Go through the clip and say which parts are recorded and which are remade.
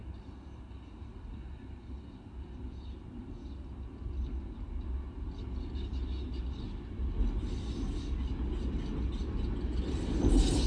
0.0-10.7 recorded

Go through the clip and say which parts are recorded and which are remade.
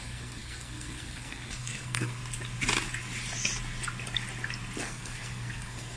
0.0-2.2 remade; 2.2-4.8 recorded; 4.8-6.0 remade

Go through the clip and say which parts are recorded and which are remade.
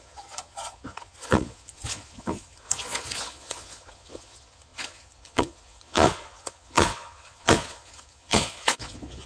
0.0-9.3 remade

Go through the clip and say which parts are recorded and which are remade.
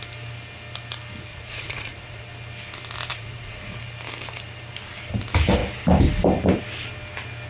0.0-1.3 recorded; 1.3-2.2 remade; 2.2-3.1 recorded; 3.1-3.8 remade; 3.8-7.5 recorded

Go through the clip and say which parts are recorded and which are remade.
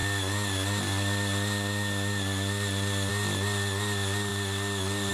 0.0-5.1 recorded